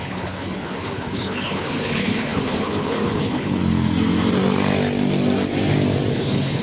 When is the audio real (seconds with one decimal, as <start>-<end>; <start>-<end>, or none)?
3.6-6.1